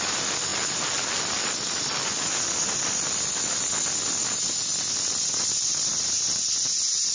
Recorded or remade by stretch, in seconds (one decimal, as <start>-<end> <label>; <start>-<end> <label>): 0.0-7.1 recorded